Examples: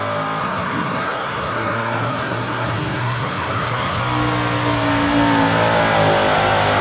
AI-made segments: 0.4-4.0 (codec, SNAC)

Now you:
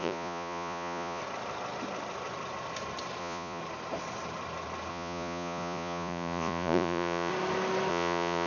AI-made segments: 0.0-1.2 (vocoder, Vocos); 3.2-3.6; 4.9-7.3; 7.9-8.5